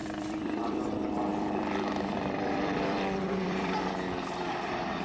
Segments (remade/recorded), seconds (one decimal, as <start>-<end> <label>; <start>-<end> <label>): 0.0-0.8 remade; 0.8-1.3 recorded; 1.3-3.9 remade; 3.9-5.0 recorded